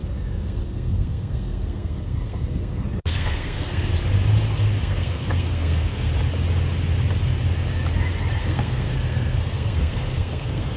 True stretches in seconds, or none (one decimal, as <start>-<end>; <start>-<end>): 3.9-4.8; 6.1-8.4